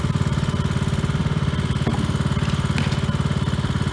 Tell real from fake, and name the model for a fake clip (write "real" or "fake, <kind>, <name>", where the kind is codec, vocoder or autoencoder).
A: real